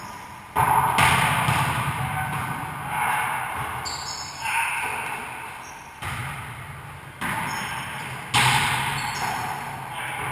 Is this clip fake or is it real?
real